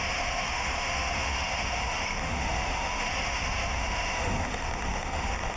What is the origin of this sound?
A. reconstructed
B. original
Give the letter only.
A